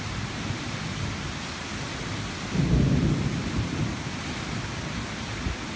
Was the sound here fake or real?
real